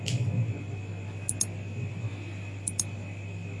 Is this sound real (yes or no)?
yes